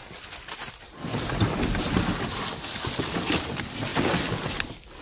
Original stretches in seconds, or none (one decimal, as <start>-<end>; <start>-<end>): 0.0-5.0